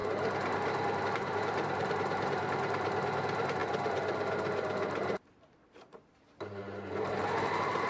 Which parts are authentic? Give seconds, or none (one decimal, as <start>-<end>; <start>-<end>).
0.0-1.0; 3.6-5.0